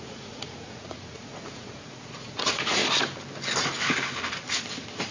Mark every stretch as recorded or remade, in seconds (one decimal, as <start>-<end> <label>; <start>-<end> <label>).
0.0-2.8 remade; 2.8-5.1 recorded